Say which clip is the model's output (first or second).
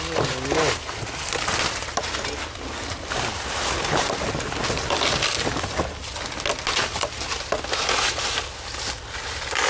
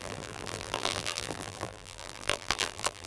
second